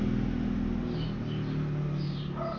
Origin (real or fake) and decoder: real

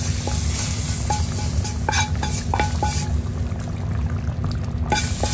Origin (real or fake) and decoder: real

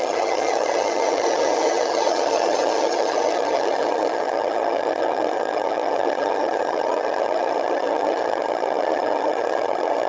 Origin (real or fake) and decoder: fake, vocoder, HiFi-GAN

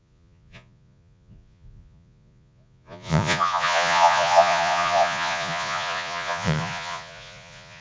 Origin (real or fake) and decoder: fake, vocoder, Vocos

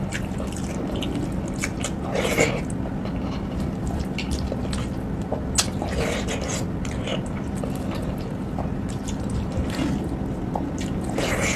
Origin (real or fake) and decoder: real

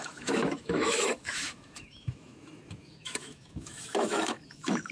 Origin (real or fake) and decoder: fake, autoencoder, DAC-VAE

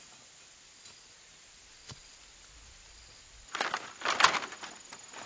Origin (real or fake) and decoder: real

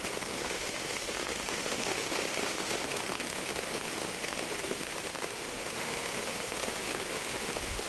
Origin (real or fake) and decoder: fake, autoencoder, DAC-VAE